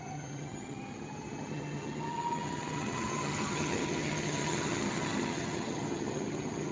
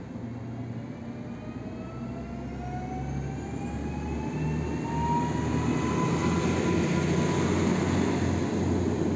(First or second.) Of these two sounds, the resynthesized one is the first